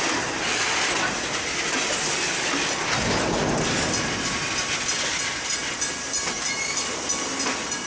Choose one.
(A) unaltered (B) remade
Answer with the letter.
A